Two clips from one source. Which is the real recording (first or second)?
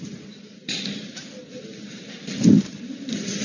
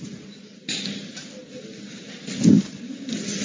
second